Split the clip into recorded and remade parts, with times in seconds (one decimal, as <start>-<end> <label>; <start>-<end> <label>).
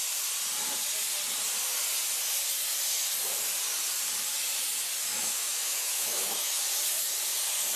0.0-5.1 recorded; 5.1-6.6 remade; 6.6-7.8 recorded